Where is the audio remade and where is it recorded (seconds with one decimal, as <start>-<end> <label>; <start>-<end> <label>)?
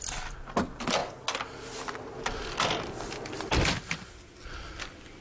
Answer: 0.0-5.2 recorded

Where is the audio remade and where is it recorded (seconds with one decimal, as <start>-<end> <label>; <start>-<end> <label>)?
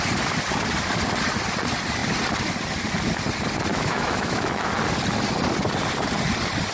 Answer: 0.0-3.7 recorded; 3.7-4.7 remade; 4.7-6.7 recorded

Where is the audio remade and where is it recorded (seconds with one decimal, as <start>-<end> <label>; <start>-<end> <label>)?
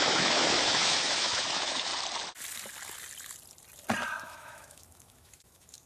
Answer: 0.0-1.9 remade; 1.9-4.2 recorded; 4.2-5.9 remade